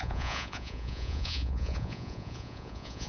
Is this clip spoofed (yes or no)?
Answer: yes